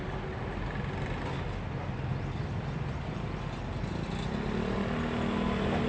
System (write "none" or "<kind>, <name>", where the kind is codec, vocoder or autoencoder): none